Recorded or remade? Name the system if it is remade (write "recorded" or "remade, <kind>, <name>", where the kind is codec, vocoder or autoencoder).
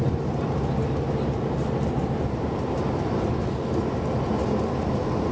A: recorded